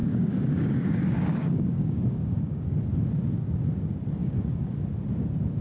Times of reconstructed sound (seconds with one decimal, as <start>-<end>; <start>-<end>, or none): 0.0-2.8; 4.2-4.9